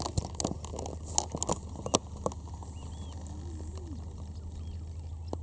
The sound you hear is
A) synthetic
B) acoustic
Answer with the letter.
B